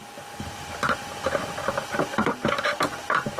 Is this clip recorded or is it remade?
recorded